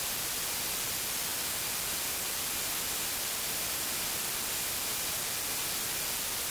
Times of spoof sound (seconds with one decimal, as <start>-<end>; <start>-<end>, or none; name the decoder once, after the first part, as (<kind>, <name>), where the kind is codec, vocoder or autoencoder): none